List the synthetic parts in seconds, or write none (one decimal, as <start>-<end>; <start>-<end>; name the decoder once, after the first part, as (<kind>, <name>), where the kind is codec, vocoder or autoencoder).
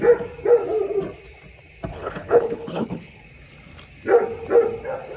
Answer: 1.9-3.2 (codec, HILCodec)